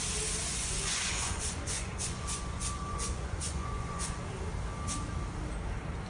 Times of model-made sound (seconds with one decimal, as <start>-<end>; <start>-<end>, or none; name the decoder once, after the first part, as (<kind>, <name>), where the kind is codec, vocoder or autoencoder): 0.5-4.2 (vocoder, Vocos)